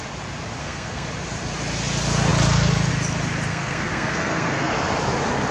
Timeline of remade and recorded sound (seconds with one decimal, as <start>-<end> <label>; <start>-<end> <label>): 0.0-0.6 recorded; 0.6-1.1 remade; 1.1-3.5 recorded; 3.5-4.7 remade; 4.7-5.5 recorded